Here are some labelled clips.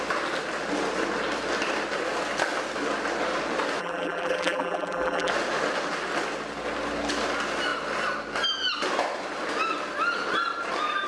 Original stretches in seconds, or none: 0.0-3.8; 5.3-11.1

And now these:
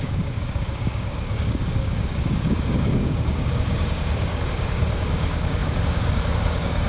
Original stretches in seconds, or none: none

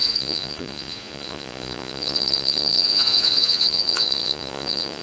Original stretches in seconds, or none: none